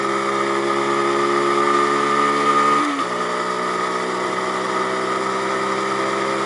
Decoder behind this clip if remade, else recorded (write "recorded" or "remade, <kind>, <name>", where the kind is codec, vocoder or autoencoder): recorded